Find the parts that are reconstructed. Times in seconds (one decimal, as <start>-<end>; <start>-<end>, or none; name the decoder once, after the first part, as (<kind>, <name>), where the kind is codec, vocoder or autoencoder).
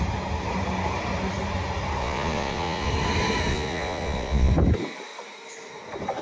2.0-2.9 (vocoder, Vocos); 3.5-4.5